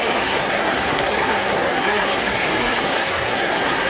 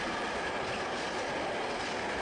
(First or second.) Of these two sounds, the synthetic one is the first